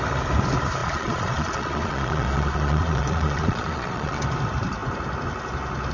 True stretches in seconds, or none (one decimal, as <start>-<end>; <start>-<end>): 0.0-0.8; 4.2-5.9